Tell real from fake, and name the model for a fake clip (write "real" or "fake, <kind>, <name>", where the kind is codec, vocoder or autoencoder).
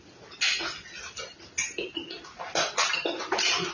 real